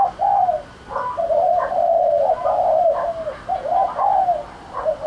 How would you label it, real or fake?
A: real